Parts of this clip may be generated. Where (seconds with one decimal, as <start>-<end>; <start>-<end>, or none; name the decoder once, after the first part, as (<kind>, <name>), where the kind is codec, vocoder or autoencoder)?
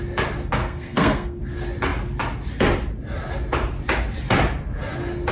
0.6-1.4 (codec, SNAC)